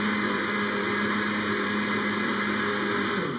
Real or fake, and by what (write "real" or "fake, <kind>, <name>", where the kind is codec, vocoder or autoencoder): real